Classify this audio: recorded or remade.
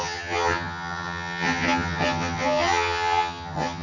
remade